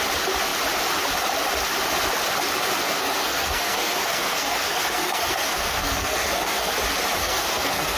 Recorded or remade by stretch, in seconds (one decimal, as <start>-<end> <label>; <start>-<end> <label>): 0.0-2.8 recorded; 2.8-6.7 remade; 6.7-7.2 recorded; 7.2-8.0 remade